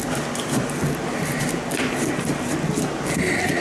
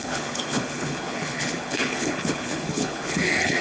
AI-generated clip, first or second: second